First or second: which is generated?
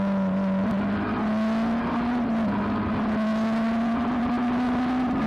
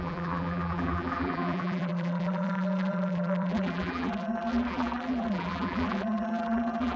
second